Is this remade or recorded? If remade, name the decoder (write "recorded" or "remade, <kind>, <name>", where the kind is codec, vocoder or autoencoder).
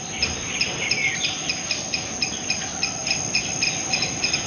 recorded